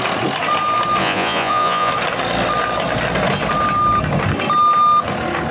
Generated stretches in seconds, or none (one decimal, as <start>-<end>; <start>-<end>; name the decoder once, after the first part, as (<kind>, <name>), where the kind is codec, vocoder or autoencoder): 1.0-1.9 (vocoder, Vocos)